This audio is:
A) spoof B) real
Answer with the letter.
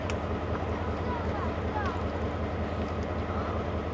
B